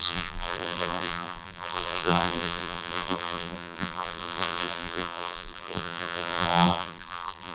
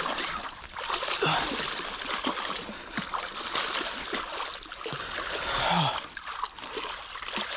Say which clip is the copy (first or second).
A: first